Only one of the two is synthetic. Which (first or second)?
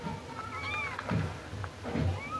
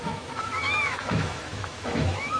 second